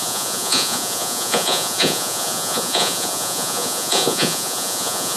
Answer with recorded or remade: remade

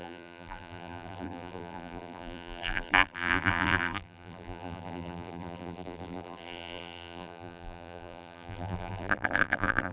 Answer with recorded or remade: remade